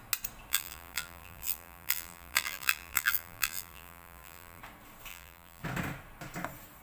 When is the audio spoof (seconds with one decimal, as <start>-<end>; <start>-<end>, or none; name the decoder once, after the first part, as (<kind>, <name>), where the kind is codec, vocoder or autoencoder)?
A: 0.5-4.6 (vocoder, BigVGAN v2); 5.1-5.6